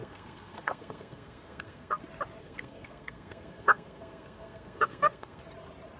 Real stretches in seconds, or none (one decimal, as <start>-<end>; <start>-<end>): 2.0-2.4; 5.4-6.0